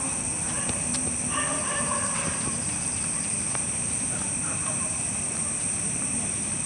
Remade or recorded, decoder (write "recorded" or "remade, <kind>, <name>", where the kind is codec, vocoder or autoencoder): remade, vocoder, BigVGAN v2